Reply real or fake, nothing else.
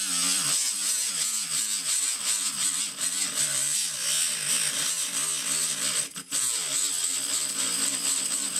real